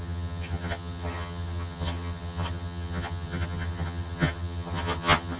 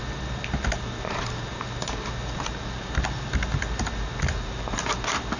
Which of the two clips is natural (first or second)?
second